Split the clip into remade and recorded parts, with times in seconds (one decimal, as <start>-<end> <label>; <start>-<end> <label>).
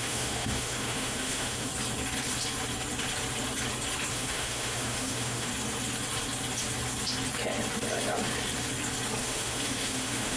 0.0-1.7 remade; 1.7-4.1 recorded; 4.1-5.5 remade; 5.5-9.2 recorded; 9.2-10.4 remade